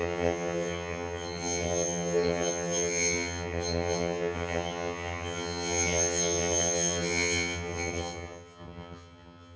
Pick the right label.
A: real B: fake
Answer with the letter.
B